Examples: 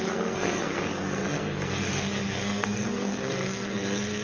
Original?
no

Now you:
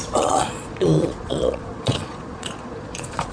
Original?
no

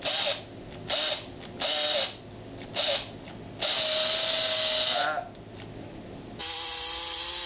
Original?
yes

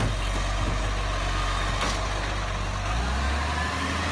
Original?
yes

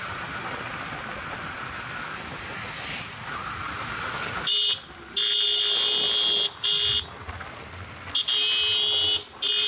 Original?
yes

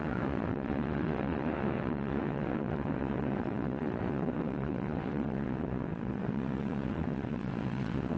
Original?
no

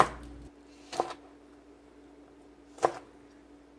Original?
yes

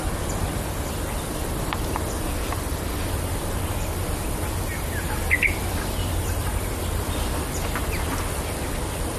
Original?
yes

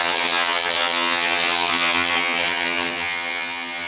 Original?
no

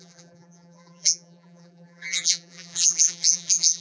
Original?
no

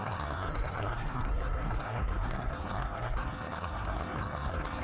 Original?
no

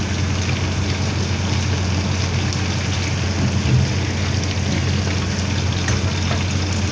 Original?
yes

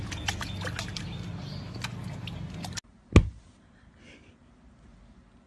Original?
yes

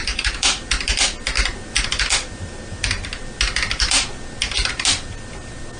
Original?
yes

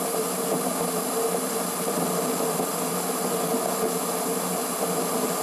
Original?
yes